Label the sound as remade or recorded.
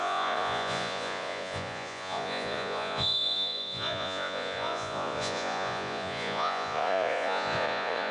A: remade